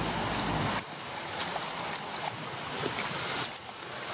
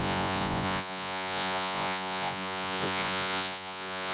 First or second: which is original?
first